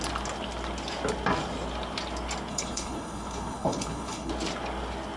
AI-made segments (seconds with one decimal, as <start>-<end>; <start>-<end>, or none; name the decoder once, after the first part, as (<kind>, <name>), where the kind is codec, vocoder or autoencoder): 2.5-4.3 (codec, HILCodec)